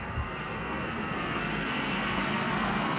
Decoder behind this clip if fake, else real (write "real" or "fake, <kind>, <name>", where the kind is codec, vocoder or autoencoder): fake, codec, SNAC